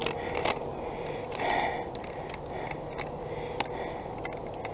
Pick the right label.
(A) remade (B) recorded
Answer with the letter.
B